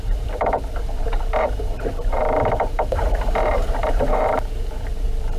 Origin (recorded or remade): remade